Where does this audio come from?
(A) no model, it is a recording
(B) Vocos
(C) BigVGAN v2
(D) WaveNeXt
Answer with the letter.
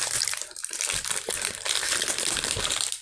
C